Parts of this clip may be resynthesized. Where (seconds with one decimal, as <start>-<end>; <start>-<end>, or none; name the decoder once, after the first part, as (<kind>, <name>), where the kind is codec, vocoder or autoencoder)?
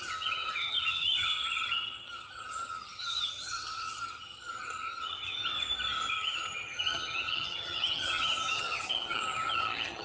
0.0-5.4 (vocoder, HiFi-GAN); 6.1-10.0